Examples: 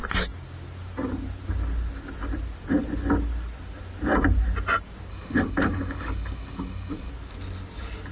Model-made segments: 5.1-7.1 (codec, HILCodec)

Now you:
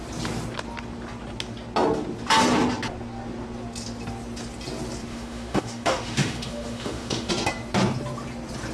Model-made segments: 5.1-7.3 (autoencoder, DAC-VAE)

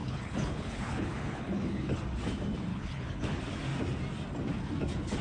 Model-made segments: 0.0-2.0 (codec, HILCodec); 2.7-3.4

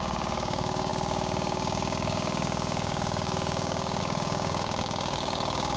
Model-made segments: 0.0-5.8 (codec, DAC)

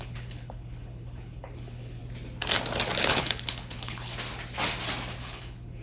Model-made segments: 0.0-2.0 (codec, HILCodec); 3.0-4.1; 5.2-5.8

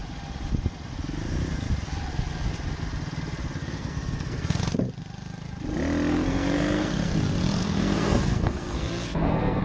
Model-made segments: 3.6-4.6 (codec, SNAC); 6.1-7.1; 7.6-9.6

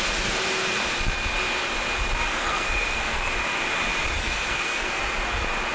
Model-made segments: 2.3-3.3 (codec, SNAC); 4.2-5.0